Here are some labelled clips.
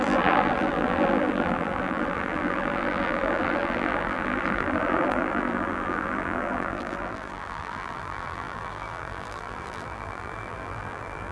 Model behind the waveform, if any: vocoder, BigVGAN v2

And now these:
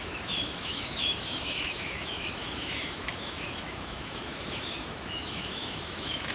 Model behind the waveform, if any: autoencoder, DAC-VAE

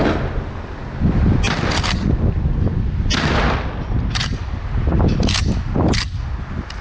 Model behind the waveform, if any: none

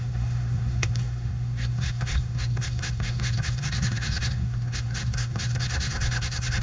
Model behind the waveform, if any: codec, SNAC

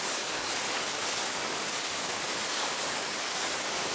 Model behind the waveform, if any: codec, DAC